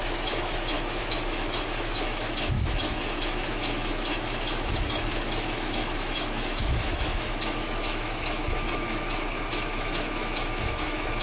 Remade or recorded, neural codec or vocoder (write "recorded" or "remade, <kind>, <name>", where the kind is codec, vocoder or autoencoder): remade, autoencoder, DAC-VAE